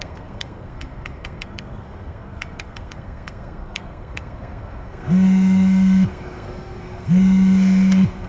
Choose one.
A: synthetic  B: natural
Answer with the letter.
A